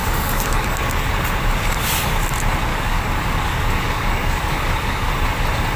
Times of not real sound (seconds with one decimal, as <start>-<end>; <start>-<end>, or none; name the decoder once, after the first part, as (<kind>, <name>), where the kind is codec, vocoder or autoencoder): 0.0-1.1 (codec, DAC); 2.7-5.1